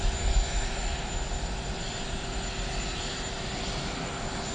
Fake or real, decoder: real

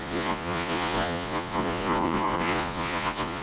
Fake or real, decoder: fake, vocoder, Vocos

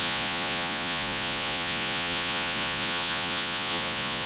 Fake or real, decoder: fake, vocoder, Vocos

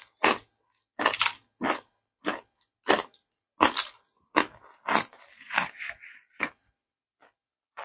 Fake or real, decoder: real